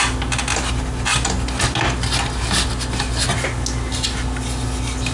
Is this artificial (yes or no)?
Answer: no